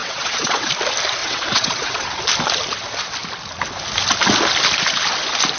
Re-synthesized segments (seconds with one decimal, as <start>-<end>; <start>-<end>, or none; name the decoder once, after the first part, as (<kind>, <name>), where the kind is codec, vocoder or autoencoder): 0.0-0.7 (vocoder, WaveNeXt); 1.2-2.2